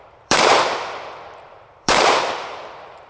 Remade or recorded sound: remade